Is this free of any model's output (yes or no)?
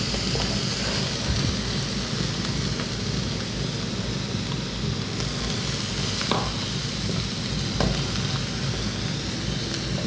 yes